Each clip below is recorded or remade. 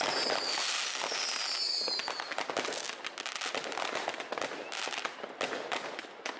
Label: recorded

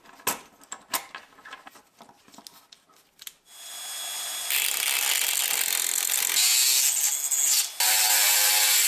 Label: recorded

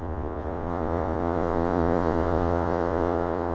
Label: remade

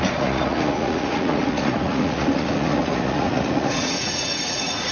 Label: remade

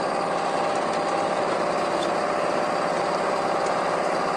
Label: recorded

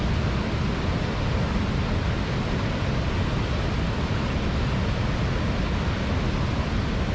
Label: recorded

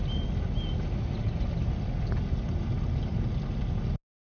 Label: recorded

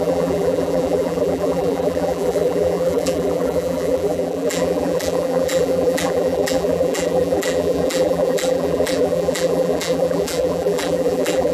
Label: remade